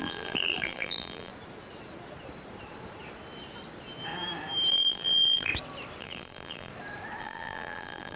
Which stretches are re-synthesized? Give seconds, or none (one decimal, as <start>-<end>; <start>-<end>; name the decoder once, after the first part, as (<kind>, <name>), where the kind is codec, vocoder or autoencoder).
0.0-1.3 (vocoder, BigVGAN v2); 4.7-5.5; 6.0-6.7; 7.2-8.2